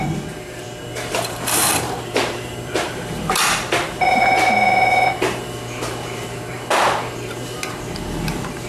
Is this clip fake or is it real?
fake